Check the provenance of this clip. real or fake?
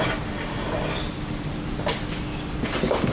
real